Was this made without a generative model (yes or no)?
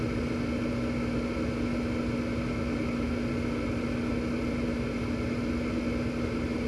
yes